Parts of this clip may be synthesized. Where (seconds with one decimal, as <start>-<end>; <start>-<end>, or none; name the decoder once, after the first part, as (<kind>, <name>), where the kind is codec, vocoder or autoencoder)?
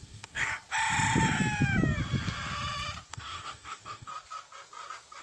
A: 0.0-0.5 (codec, DAC); 3.1-4.1